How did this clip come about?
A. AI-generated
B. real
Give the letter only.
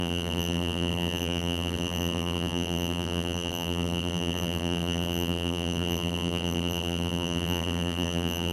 A